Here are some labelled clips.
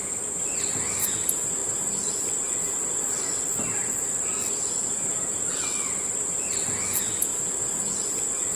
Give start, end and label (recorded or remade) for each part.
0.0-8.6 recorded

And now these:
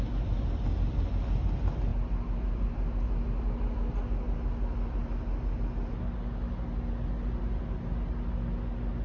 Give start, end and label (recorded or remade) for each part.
0.0-9.0 recorded

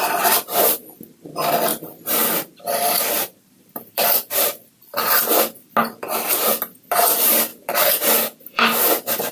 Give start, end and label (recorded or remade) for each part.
0.0-1.7 recorded; 1.7-4.3 remade; 4.3-5.8 recorded; 5.8-6.5 remade; 6.5-7.5 recorded; 7.5-8.6 remade; 8.6-9.3 recorded